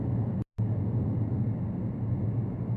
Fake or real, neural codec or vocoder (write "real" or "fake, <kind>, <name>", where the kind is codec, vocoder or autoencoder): real